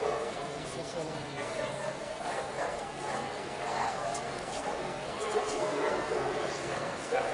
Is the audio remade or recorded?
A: remade